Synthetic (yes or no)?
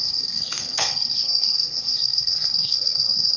yes